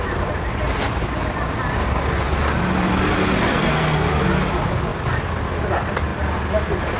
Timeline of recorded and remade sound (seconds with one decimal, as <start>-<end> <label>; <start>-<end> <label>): 0.0-3.5 recorded; 3.5-4.2 remade; 4.2-7.0 recorded